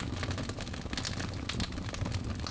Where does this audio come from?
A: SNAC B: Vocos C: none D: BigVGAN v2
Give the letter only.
C